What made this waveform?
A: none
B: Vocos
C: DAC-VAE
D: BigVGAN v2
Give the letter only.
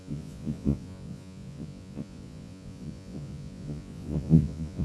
B